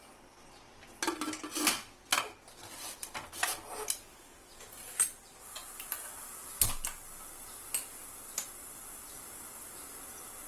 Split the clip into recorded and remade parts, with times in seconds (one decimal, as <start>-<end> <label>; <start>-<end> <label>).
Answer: 0.0-10.5 recorded